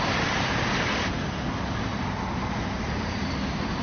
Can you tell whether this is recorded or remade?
recorded